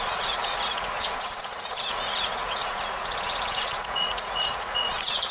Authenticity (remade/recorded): remade